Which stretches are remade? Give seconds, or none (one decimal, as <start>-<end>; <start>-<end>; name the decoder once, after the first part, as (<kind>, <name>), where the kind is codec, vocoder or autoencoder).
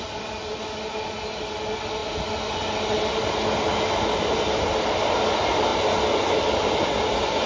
none